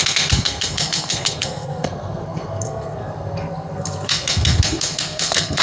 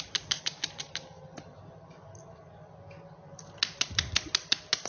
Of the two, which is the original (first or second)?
second